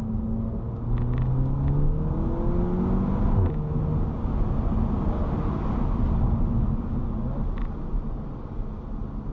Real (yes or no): yes